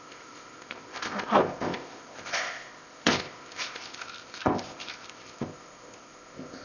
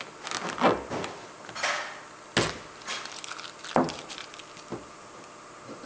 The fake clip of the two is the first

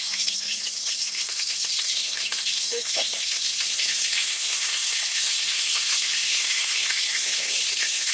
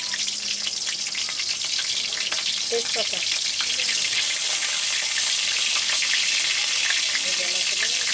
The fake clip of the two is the first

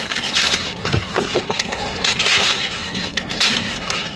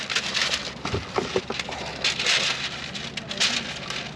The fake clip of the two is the first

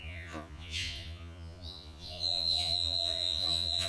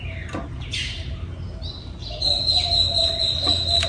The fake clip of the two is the first